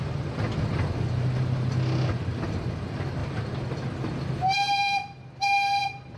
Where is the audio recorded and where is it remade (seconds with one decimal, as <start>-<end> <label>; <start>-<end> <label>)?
0.0-6.2 recorded